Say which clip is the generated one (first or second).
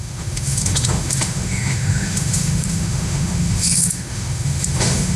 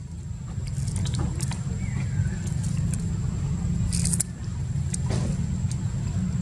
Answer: first